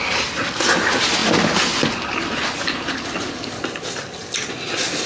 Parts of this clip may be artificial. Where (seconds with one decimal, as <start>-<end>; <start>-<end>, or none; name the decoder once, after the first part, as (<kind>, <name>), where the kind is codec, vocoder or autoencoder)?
none